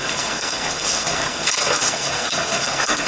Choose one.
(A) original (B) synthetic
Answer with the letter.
B